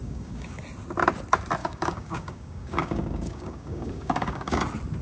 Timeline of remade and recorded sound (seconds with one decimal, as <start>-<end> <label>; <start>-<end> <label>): 0.0-0.6 remade; 0.6-1.6 recorded; 1.6-4.6 remade; 4.6-5.0 recorded